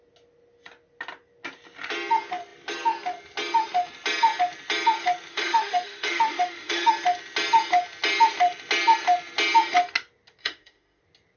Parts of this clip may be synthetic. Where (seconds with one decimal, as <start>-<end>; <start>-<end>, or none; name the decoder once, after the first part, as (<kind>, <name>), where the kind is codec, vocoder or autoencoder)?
5.3-6.9 (autoencoder, DAC-VAE); 10.4-11.0